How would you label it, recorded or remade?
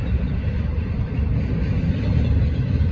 recorded